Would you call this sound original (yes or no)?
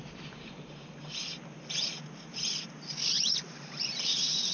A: yes